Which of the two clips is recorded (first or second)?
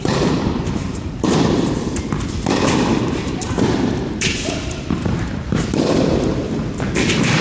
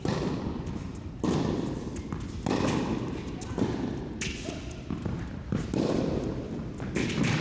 second